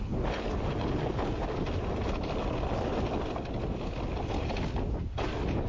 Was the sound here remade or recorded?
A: recorded